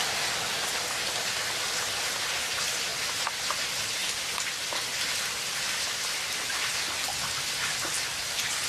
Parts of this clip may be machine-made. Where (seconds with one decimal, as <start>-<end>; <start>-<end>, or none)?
2.9-3.4; 4.0-6.8